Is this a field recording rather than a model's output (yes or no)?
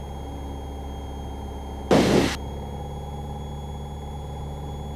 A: yes